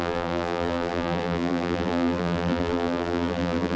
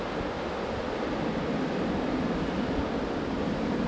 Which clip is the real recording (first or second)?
second